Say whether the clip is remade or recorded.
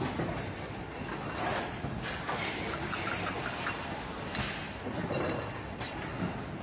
recorded